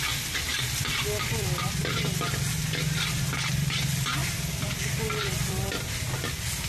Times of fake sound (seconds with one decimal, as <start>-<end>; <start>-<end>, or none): 0.0-1.8; 3.5-4.2; 4.9-6.7